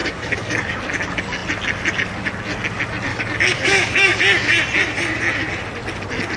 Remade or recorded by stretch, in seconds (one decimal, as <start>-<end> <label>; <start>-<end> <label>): 0.0-0.7 remade; 0.7-3.1 recorded; 3.1-4.2 remade; 4.2-6.4 recorded

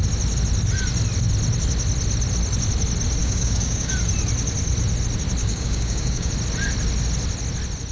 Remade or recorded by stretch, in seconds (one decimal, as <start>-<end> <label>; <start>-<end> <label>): 0.0-3.2 recorded; 3.2-3.9 remade; 3.9-5.4 recorded; 5.4-6.3 remade; 6.3-7.9 recorded